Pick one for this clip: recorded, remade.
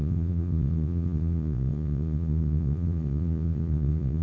remade